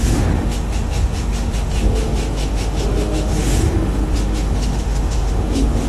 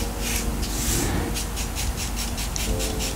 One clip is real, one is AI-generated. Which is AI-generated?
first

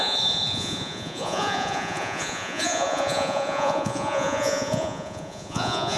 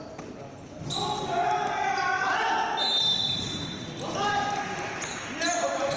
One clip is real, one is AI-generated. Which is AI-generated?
first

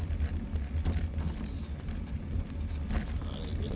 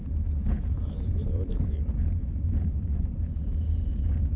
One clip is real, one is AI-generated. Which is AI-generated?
second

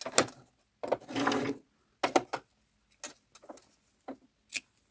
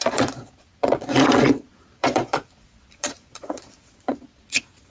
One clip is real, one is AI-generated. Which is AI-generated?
second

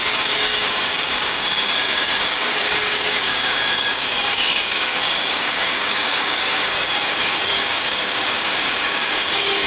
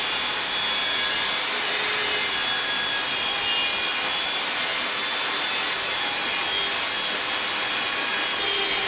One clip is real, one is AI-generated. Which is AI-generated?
first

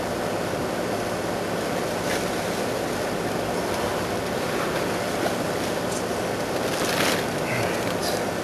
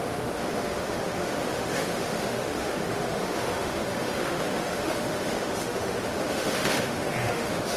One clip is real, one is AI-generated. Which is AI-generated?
second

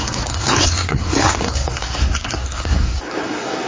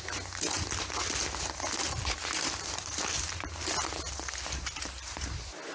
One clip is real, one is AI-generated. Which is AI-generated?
first